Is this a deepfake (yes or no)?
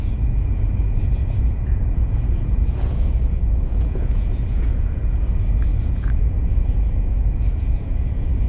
yes